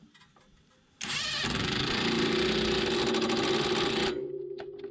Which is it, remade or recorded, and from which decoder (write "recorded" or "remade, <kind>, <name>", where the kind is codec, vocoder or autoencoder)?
recorded